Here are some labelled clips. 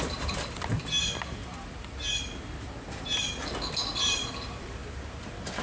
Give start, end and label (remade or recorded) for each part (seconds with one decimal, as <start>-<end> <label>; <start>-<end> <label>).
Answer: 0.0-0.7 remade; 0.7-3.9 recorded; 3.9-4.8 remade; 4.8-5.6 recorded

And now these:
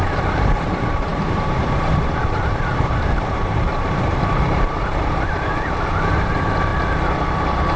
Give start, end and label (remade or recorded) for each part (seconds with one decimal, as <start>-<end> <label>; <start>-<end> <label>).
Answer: 0.0-6.7 remade; 6.7-7.8 recorded

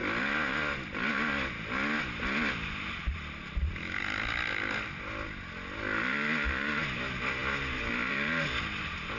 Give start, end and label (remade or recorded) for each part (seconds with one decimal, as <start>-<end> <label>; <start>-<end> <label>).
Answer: 0.0-9.2 recorded

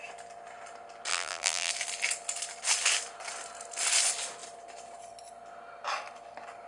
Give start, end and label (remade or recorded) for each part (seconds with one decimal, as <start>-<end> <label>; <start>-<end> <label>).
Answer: 0.0-1.1 recorded; 1.1-1.7 remade; 1.7-6.7 recorded

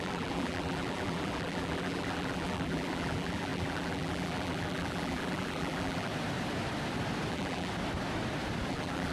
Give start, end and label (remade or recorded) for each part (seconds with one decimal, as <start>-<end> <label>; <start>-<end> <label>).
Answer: 0.0-6.1 remade; 6.1-7.3 recorded; 7.3-7.7 remade; 7.7-8.7 recorded; 8.7-9.1 remade